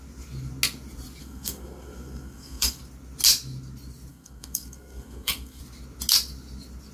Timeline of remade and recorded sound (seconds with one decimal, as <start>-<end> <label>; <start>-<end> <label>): 0.0-1.2 recorded; 1.2-2.8 remade; 2.8-4.1 recorded; 4.1-5.6 remade; 5.6-6.9 recorded